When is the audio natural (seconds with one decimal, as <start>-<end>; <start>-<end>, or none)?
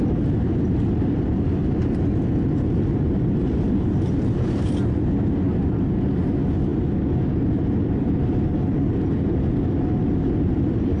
0.0-11.0